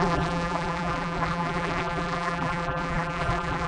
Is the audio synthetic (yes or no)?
yes